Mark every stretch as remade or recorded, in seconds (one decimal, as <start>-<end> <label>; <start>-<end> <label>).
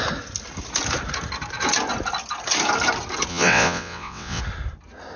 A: 0.0-3.3 recorded; 3.3-4.4 remade; 4.4-5.2 recorded